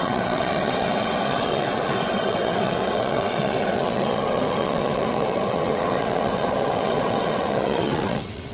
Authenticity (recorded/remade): remade